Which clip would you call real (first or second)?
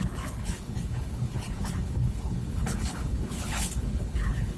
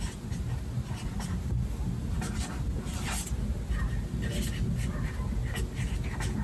second